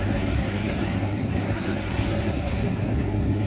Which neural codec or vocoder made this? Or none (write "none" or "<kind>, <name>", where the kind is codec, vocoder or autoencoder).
codec, SNAC